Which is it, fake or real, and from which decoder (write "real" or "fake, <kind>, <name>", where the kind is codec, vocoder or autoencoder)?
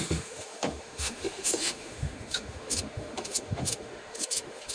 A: fake, autoencoder, DAC-VAE